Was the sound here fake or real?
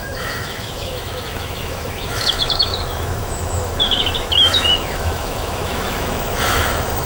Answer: fake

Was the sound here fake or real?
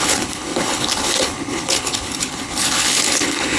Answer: fake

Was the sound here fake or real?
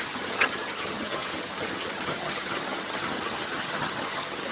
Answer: fake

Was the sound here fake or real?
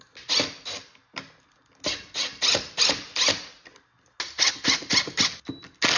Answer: real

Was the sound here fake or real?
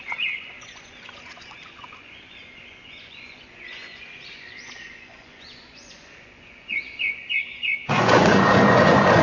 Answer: fake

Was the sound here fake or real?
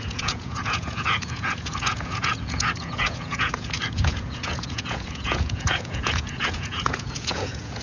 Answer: fake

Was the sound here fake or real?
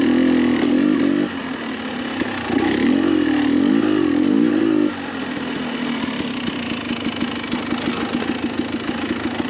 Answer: real